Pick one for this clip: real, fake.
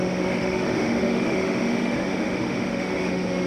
fake